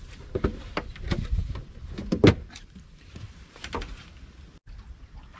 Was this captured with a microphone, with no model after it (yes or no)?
yes